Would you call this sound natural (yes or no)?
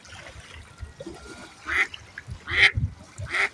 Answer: yes